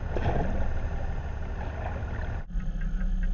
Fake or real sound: real